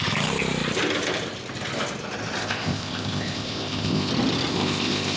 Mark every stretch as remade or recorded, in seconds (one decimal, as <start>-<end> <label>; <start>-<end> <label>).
0.0-2.4 recorded; 2.4-4.1 remade; 4.1-4.5 recorded; 4.5-5.2 remade